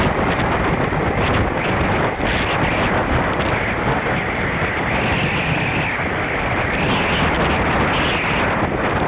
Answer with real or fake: real